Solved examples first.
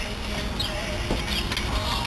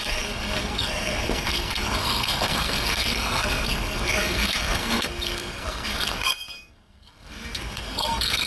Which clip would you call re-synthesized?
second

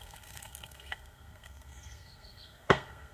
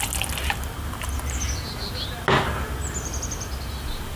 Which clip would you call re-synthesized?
first